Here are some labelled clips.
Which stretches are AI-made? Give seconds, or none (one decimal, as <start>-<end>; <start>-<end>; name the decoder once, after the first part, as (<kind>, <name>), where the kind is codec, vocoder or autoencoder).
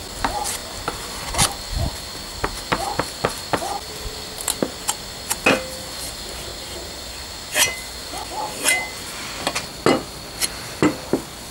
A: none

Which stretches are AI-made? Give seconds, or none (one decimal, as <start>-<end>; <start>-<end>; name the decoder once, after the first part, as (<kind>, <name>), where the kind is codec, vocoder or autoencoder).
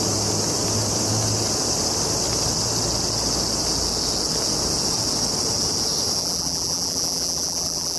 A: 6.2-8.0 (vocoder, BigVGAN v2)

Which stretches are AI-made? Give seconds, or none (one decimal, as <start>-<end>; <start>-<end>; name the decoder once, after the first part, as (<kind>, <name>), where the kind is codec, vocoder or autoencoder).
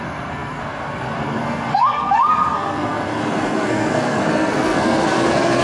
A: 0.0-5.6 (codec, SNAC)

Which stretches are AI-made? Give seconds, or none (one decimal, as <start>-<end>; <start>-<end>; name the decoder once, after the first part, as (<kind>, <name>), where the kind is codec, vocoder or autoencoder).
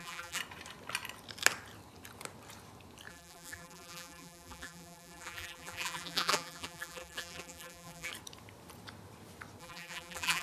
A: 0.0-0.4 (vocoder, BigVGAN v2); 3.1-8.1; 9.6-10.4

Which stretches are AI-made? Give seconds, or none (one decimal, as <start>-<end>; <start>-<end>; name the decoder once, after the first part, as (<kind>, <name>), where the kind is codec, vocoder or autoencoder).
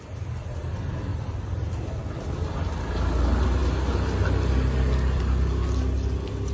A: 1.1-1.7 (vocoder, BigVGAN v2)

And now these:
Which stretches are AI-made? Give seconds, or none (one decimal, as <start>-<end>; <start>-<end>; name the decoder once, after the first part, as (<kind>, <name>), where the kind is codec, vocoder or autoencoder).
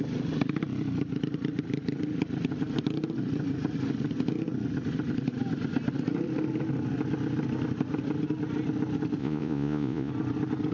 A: 9.2-10.1 (vocoder, Vocos)